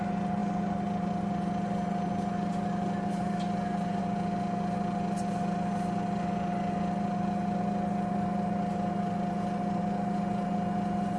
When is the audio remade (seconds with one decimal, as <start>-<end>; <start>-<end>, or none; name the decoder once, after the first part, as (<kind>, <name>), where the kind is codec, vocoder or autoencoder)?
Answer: none